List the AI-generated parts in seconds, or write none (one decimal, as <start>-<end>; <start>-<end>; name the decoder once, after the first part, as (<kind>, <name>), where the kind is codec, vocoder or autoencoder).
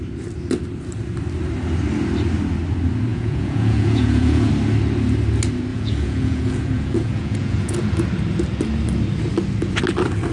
3.1-4.5 (vocoder, Vocos); 5.7-7.9